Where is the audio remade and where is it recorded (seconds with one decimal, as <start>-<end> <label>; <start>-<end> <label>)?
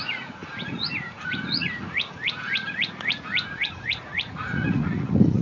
0.0-5.4 remade